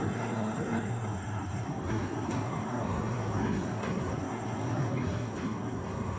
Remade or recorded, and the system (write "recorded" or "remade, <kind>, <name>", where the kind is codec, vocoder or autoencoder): remade, codec, SNAC